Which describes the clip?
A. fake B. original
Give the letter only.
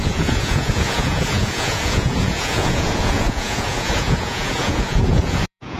A